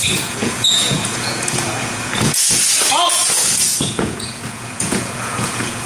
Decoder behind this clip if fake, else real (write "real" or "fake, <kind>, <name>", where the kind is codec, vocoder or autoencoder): fake, vocoder, Vocos